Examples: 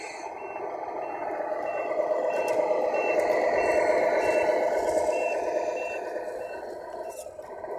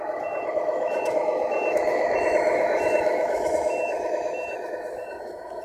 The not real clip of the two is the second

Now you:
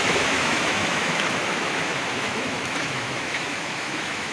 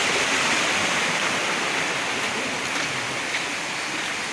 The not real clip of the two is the first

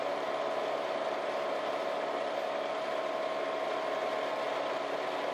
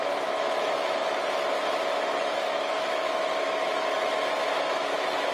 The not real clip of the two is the second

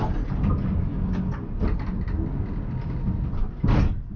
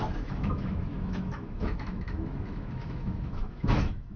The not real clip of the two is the second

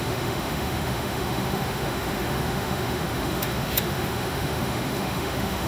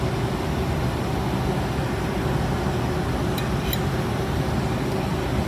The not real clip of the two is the first